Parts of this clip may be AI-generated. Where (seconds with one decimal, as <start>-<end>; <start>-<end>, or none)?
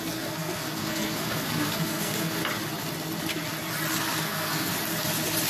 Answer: 0.0-2.4; 4.2-4.7